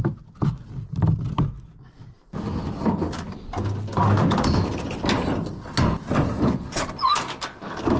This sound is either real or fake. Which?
real